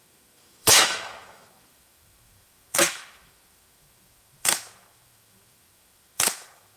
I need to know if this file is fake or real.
fake